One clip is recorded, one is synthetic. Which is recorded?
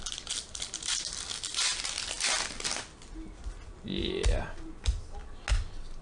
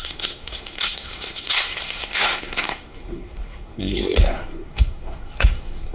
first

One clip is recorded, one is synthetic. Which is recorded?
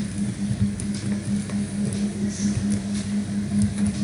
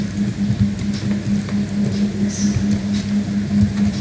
second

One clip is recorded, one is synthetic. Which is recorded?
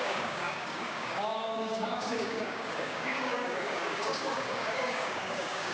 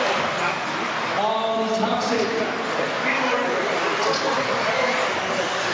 second